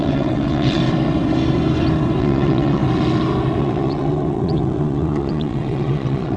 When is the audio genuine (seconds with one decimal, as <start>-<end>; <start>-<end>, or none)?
0.8-2.2; 2.8-3.6